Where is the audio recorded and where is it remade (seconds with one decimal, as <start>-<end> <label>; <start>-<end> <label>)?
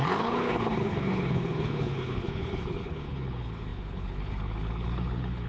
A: 0.0-5.5 remade